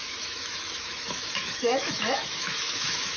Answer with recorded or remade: remade